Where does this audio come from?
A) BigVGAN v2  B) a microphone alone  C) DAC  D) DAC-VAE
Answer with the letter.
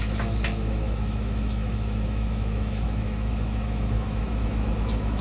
D